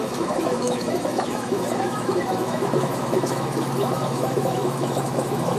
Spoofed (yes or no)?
yes